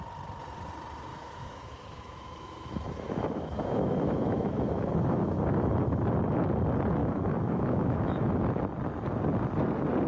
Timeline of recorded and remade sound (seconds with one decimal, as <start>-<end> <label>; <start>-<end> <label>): 0.0-1.1 recorded; 1.1-5.4 remade; 5.4-7.0 recorded; 7.0-8.3 remade; 8.3-10.1 recorded

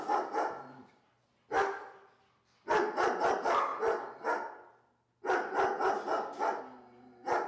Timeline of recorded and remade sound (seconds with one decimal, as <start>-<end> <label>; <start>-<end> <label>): 0.0-7.5 recorded